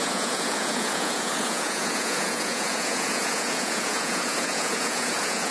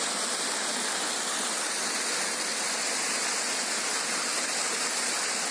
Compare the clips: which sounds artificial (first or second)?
first